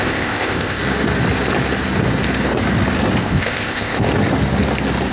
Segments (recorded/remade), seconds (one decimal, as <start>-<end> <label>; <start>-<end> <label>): 0.0-0.8 remade; 0.8-3.2 recorded; 3.2-4.1 remade; 4.1-5.1 recorded